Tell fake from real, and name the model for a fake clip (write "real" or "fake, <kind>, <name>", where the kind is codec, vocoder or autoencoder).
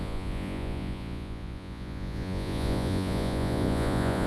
fake, vocoder, Vocos